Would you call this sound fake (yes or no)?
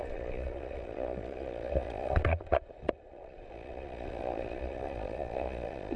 yes